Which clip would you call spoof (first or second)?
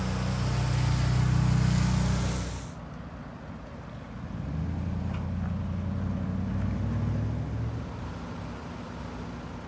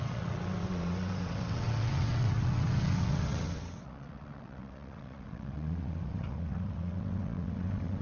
second